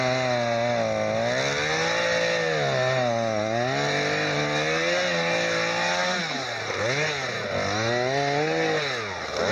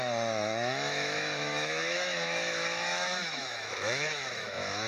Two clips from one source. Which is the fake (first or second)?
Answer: second